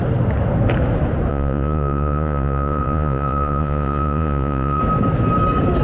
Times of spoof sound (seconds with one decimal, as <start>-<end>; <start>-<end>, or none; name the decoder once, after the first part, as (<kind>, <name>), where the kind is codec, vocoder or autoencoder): 1.3-4.8 (vocoder, Vocos)